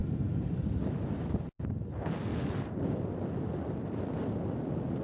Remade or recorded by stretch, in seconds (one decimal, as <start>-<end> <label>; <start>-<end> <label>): 0.0-5.0 recorded